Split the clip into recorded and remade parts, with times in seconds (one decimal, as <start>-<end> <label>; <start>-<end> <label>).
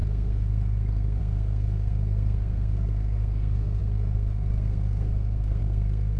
0.0-6.2 remade